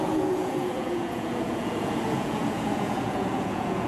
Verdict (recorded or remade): remade